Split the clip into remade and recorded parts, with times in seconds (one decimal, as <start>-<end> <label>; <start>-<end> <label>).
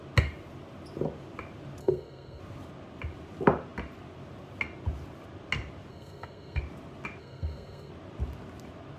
0.0-1.8 recorded; 1.8-2.4 remade; 2.4-5.9 recorded; 5.9-6.6 remade; 6.6-7.2 recorded; 7.2-7.9 remade; 7.9-9.0 recorded